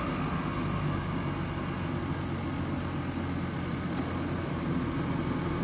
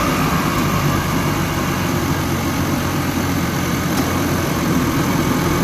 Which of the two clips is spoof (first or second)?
second